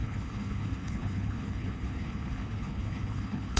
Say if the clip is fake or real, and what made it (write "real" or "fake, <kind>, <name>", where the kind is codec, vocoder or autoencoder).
fake, codec, HILCodec